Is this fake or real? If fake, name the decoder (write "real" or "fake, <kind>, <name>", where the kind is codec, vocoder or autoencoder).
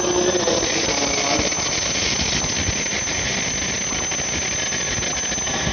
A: real